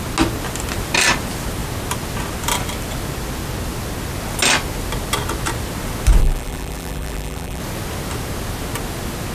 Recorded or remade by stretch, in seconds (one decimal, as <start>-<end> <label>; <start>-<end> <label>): 0.0-6.2 recorded; 6.2-7.6 remade; 7.6-9.3 recorded